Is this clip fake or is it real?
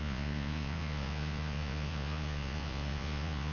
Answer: fake